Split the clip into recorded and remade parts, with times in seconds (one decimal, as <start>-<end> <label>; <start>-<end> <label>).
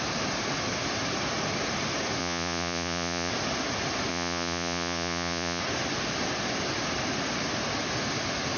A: 0.0-2.2 recorded; 2.2-3.3 remade; 3.3-4.1 recorded; 4.1-5.6 remade; 5.6-8.6 recorded